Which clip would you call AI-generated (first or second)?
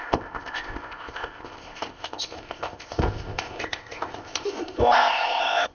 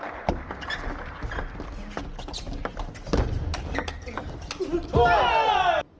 first